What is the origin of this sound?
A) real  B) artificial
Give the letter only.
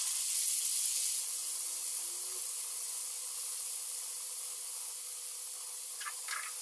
A